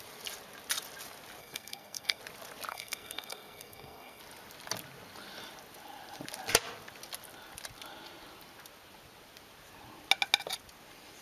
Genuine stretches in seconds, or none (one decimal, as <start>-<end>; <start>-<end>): 0.0-1.4; 2.2-2.7; 4.2-11.2